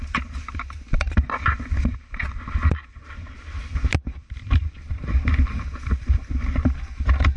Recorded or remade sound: recorded